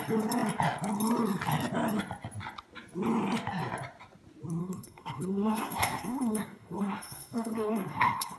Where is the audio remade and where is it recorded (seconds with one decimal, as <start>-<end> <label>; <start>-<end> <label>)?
0.0-4.6 recorded; 4.6-8.4 remade